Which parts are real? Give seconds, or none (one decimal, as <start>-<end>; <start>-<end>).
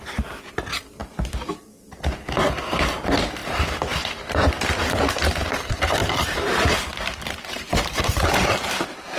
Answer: none